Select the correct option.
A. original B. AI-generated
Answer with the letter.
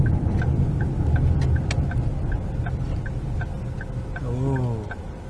A